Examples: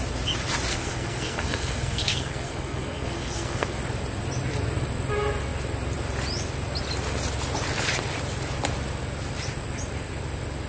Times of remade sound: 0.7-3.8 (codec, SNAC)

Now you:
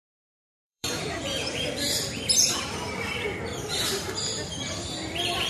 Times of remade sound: 0.5-1.6 (vocoder, BigVGAN v2)

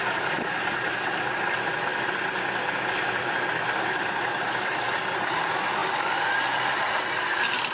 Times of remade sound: none

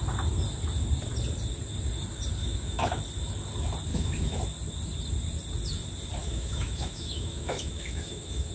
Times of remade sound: 2.4-3.0 (autoencoder, DAC-VAE); 3.9-4.4; 6.2-8.5

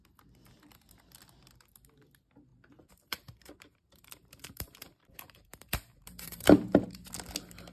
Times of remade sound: 2.5-7.1 (vocoder, BigVGAN v2)

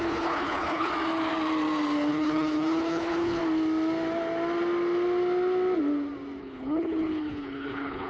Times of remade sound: 0.0-0.9 (codec, HILCodec); 2.1-3.4; 6.4-8.1

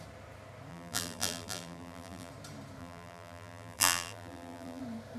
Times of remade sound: 0.7-2.3 (vocoder, BigVGAN v2); 2.8-4.8

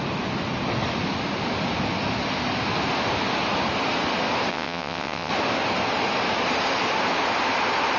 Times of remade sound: 4.5-5.3 (vocoder, WaveNeXt)